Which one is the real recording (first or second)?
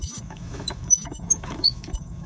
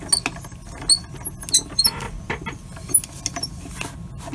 second